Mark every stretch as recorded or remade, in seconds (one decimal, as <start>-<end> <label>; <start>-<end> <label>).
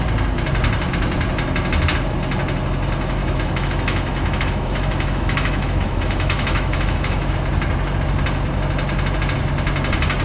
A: 0.0-3.2 recorded; 3.2-7.3 remade; 7.3-10.2 recorded